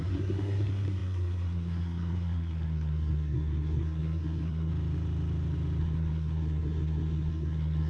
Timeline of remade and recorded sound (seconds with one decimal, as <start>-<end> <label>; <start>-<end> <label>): 0.0-4.7 remade; 4.7-5.8 recorded; 5.8-7.9 remade